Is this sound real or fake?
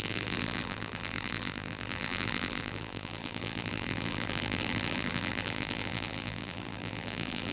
fake